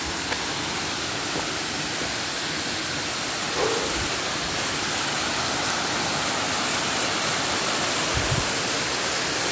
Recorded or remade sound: recorded